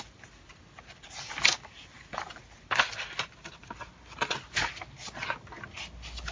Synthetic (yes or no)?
no